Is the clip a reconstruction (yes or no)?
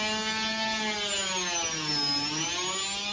no